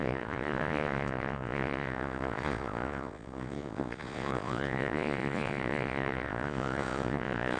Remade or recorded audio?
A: remade